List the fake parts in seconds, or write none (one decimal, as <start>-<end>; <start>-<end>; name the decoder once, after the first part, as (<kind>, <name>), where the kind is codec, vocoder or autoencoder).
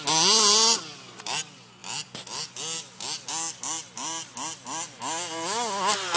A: none